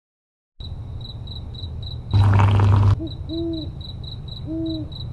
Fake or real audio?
real